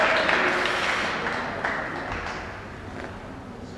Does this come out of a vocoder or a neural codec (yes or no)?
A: no